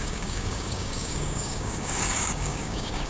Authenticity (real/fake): fake